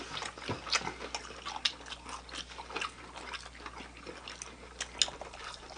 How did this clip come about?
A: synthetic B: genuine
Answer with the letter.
B